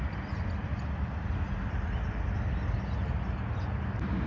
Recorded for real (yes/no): yes